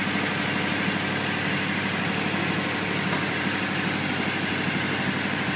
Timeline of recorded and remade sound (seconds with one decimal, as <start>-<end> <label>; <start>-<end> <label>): 0.0-5.6 recorded